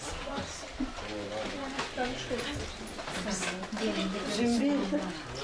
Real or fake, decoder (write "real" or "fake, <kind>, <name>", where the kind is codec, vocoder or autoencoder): real